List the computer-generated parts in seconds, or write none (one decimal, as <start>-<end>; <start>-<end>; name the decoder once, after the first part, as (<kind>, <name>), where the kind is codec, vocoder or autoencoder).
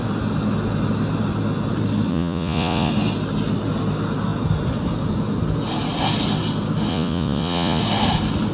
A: 2.1-2.9 (vocoder, Vocos); 6.9-7.8